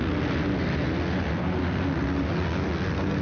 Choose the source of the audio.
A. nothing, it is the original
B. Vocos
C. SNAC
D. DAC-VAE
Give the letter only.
A